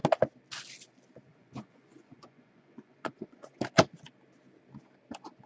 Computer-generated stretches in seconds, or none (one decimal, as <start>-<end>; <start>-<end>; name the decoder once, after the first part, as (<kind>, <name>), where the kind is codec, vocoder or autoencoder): 1.3-3.6 (vocoder, Vocos)